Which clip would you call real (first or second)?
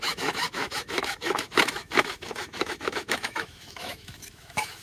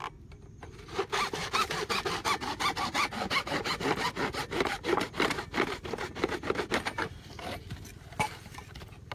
second